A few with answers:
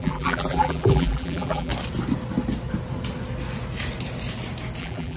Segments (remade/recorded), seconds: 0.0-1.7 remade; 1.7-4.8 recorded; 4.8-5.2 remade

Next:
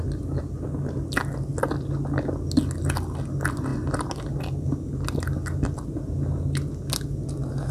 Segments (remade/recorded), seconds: 0.0-7.7 recorded

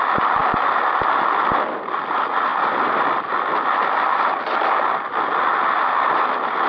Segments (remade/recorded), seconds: 0.0-6.7 recorded

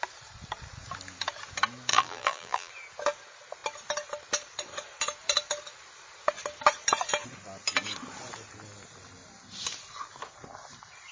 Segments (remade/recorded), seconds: 0.0-1.9 recorded; 1.9-2.7 remade; 2.7-11.1 recorded

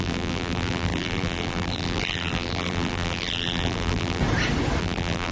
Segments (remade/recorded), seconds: 0.0-4.2 remade; 4.2-4.8 recorded; 4.8-5.3 remade

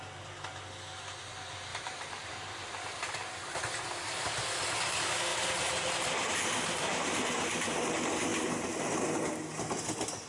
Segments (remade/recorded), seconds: 0.0-1.7 recorded; 1.7-3.6 remade; 3.6-5.3 recorded; 5.3-7.8 remade; 7.8-8.3 recorded; 8.3-9.2 remade; 9.2-10.3 recorded

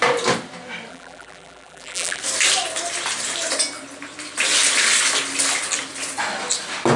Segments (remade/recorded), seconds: 0.0-0.9 recorded; 0.9-2.2 remade; 2.2-7.0 recorded

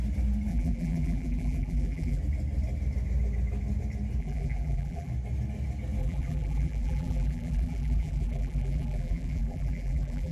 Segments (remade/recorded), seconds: 0.0-0.5 recorded; 0.5-2.2 remade; 2.2-4.2 recorded; 4.2-5.1 remade; 5.1-6.0 recorded; 6.0-10.3 remade